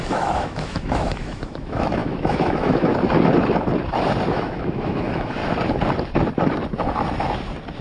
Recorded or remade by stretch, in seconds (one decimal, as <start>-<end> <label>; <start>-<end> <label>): 0.0-2.9 remade; 2.9-4.3 recorded; 4.3-5.4 remade; 5.4-7.8 recorded